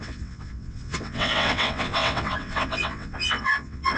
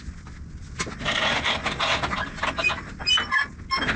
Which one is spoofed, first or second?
first